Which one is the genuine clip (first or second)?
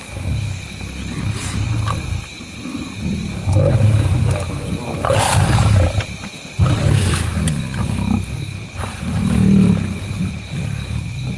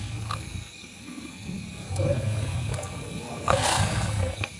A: first